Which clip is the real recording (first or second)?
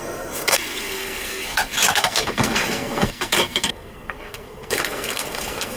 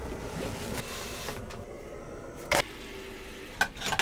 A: second